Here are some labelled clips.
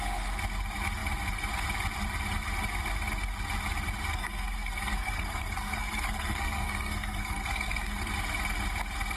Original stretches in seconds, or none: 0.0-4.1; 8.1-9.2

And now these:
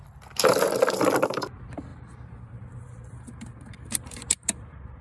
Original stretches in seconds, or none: 0.0-1.9